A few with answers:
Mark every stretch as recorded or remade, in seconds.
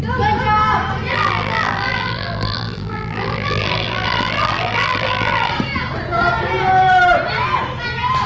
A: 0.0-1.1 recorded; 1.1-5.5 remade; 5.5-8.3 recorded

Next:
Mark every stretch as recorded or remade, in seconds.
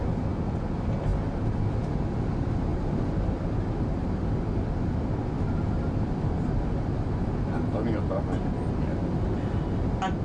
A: 0.0-10.2 recorded